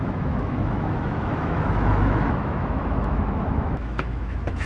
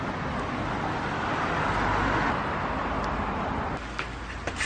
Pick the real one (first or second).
second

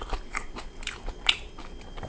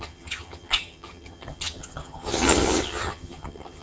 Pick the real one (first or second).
first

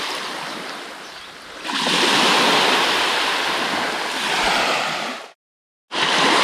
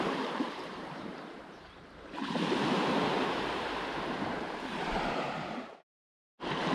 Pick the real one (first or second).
first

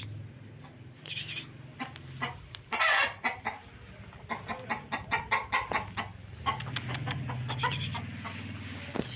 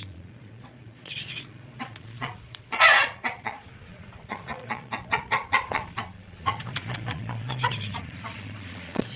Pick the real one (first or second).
first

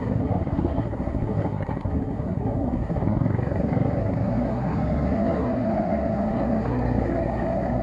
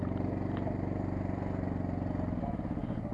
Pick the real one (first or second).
second